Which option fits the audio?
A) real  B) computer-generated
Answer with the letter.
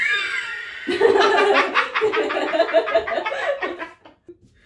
A